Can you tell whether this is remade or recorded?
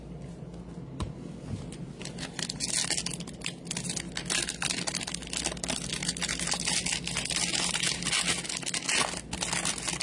recorded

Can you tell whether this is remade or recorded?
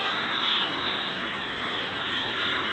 remade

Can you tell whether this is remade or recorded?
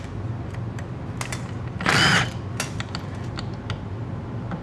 recorded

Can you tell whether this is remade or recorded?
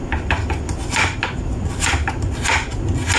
recorded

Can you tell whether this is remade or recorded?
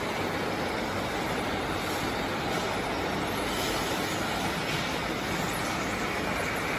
recorded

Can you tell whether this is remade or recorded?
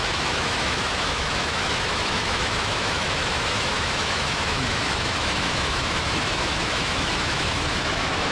remade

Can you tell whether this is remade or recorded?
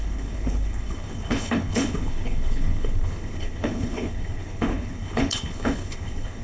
remade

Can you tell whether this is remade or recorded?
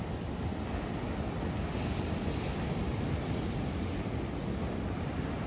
recorded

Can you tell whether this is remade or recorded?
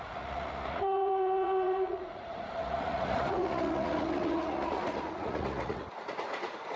remade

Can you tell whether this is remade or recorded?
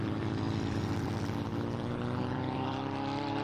remade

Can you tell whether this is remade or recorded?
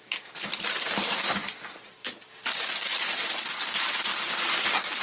recorded